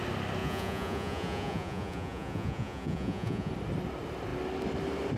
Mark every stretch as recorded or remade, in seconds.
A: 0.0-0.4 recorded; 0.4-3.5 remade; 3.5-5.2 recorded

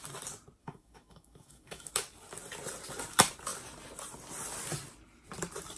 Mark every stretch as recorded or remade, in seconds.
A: 0.0-0.6 recorded; 0.6-1.9 remade; 1.9-5.8 recorded

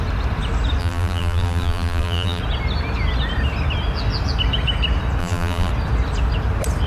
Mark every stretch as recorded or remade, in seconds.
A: 0.0-0.8 recorded; 0.8-2.4 remade; 2.4-5.2 recorded; 5.2-5.7 remade; 5.7-6.9 recorded

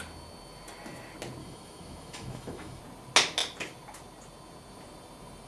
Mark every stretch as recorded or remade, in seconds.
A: 0.0-1.4 recorded; 1.4-2.8 remade; 2.8-5.5 recorded

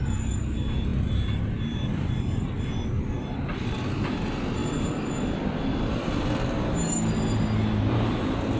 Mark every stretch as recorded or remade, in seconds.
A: 0.0-8.6 recorded

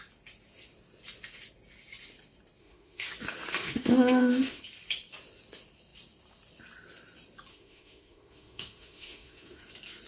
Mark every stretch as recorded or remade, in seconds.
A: 0.0-2.6 recorded; 2.6-3.1 remade; 3.1-3.6 recorded; 3.6-4.6 remade; 4.6-7.5 recorded; 7.5-9.6 remade; 9.6-10.1 recorded

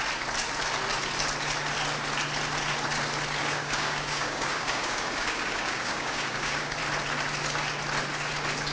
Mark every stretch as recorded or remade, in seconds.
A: 0.0-3.4 recorded; 3.4-6.8 remade; 6.8-8.7 recorded